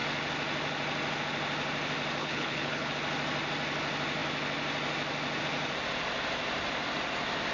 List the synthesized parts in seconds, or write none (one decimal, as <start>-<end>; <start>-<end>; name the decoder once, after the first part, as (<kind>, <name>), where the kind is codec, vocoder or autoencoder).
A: 2.2-2.9 (codec, HILCodec)